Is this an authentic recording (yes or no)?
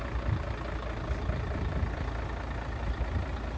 yes